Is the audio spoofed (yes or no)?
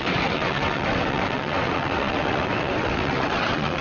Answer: yes